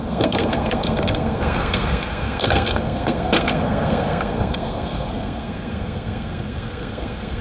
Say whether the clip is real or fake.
fake